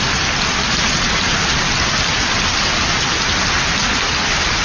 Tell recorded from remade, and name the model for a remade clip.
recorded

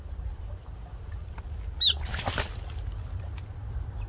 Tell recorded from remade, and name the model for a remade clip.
recorded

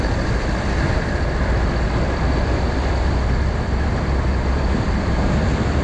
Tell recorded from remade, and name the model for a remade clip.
remade, vocoder, BigVGAN v2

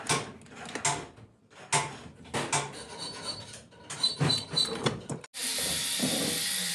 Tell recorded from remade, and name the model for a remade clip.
recorded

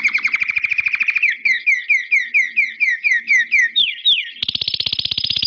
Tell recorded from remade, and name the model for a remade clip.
recorded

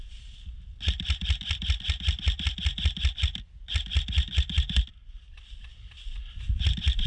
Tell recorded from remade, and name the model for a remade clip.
recorded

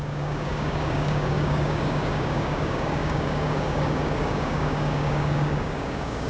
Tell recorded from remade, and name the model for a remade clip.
remade, codec, DAC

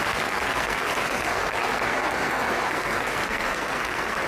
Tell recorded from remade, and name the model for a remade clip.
remade, codec, SNAC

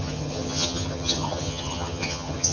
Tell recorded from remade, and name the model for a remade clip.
remade, vocoder, HiFi-GAN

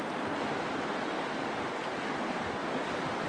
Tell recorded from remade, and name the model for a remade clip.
recorded